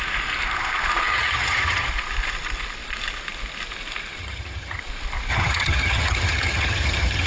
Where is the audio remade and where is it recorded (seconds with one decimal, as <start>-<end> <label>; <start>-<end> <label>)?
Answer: 0.0-1.1 recorded; 1.1-1.9 remade; 1.9-4.2 recorded; 4.2-4.8 remade; 4.8-5.3 recorded; 5.3-7.3 remade